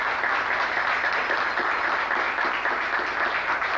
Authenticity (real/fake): real